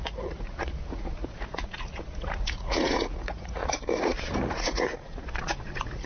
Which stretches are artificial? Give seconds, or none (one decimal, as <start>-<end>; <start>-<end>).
0.0-6.1